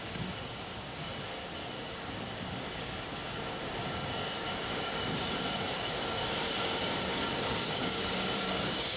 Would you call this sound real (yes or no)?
no